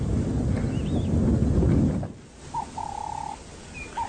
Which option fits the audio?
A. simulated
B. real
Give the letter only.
B